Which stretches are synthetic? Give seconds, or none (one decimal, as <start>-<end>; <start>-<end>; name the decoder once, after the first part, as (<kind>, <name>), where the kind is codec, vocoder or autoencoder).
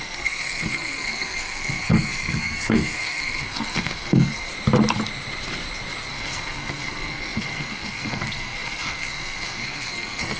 0.0-4.5 (codec, SNAC); 6.1-10.4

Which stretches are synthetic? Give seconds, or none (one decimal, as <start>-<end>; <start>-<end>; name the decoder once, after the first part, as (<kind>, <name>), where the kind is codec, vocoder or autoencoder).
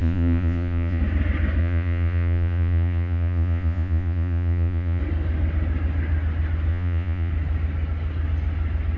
0.0-1.0 (vocoder, Vocos); 1.6-5.0; 6.7-7.3